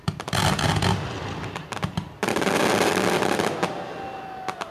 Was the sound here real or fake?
real